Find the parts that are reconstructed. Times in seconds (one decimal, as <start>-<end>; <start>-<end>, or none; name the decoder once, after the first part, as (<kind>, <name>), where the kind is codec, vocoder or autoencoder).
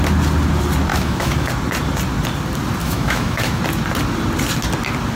0.9-1.5 (autoencoder, DAC-VAE); 2.8-3.6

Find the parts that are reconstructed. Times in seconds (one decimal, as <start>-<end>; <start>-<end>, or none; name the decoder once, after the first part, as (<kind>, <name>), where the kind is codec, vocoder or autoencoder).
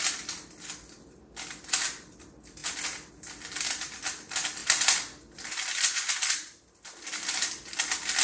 none